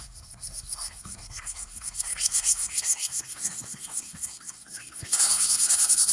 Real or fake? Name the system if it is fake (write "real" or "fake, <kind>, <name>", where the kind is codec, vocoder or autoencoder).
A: fake, codec, SNAC